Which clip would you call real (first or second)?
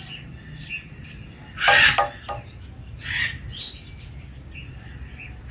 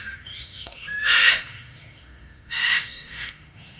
first